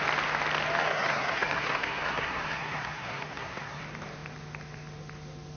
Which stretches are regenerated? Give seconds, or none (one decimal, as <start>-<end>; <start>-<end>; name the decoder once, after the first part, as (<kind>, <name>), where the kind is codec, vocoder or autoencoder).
0.8-3.8 (codec, SNAC)